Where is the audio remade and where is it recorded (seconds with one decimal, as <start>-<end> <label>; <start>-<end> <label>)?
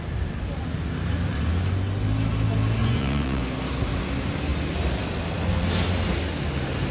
0.0-2.8 recorded; 2.8-3.4 remade; 3.4-6.9 recorded